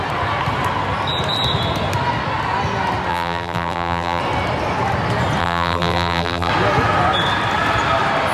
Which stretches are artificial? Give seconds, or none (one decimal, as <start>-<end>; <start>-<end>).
3.1-4.2; 5.4-6.5